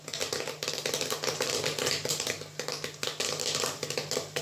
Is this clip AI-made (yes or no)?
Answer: no